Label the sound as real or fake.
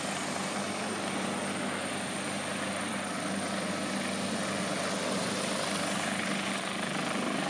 real